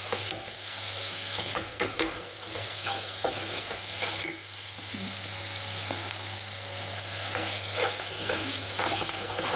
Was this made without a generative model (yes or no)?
no